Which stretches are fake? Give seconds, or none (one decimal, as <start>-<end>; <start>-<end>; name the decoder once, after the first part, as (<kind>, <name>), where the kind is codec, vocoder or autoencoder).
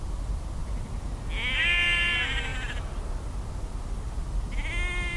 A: none